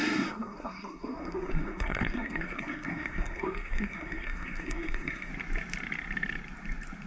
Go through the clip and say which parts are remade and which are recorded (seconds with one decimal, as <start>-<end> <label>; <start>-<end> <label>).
0.0-5.3 remade; 5.3-7.1 recorded